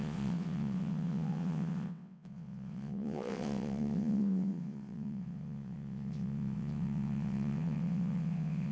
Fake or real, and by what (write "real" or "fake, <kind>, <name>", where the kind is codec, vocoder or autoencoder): fake, vocoder, WaveNeXt